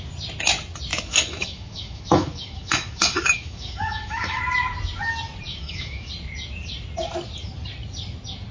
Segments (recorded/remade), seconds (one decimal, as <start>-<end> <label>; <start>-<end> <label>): 0.0-0.9 recorded; 0.9-4.4 remade; 4.4-5.5 recorded; 5.5-6.1 remade; 6.1-8.5 recorded